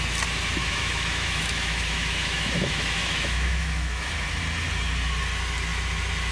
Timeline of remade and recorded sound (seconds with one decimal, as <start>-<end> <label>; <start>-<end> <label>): 0.0-0.6 recorded; 0.6-4.4 remade; 4.4-6.3 recorded